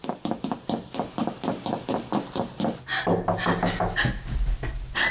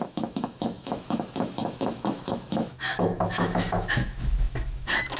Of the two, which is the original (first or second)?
first